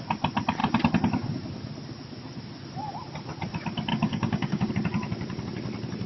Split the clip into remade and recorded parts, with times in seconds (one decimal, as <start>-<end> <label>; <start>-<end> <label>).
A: 0.0-3.9 recorded; 3.9-4.7 remade; 4.7-6.1 recorded